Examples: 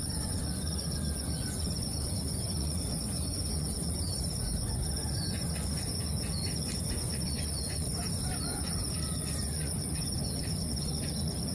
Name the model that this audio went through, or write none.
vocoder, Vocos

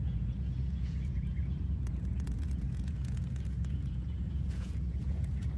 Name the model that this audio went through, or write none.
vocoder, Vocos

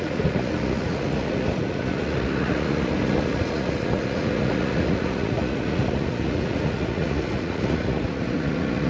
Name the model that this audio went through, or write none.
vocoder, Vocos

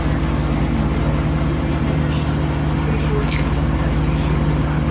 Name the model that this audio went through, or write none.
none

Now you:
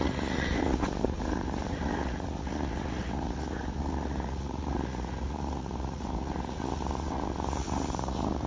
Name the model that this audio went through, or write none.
vocoder, Vocos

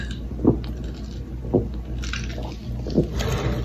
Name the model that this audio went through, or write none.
none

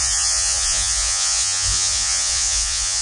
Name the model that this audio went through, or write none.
vocoder, Vocos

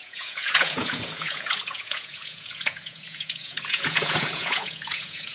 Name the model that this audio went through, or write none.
vocoder, Vocos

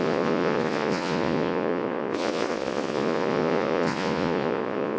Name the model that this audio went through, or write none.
vocoder, Vocos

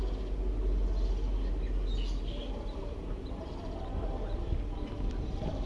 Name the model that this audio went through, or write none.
none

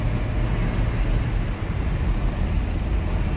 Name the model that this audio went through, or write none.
none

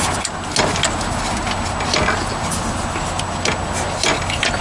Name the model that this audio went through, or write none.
none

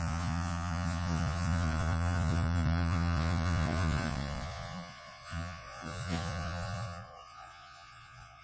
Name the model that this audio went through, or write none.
vocoder, Vocos